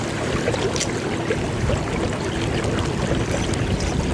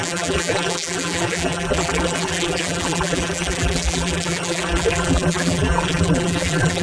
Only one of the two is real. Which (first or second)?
first